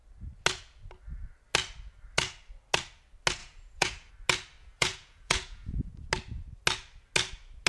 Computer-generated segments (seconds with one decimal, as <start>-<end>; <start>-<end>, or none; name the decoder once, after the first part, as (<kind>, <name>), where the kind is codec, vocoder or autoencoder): 3.4-4.1 (vocoder, Vocos); 4.6-5.9